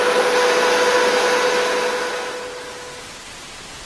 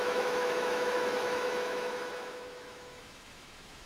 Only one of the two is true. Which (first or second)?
first